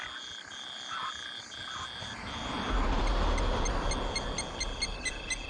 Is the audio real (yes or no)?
yes